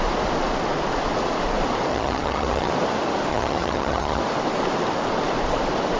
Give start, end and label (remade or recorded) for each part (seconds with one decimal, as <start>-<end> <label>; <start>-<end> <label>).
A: 0.0-1.9 recorded; 1.9-2.7 remade; 2.7-3.3 recorded; 3.3-4.2 remade; 4.2-6.0 recorded